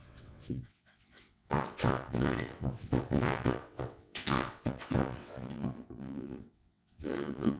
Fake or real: fake